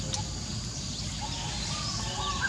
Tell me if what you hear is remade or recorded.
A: recorded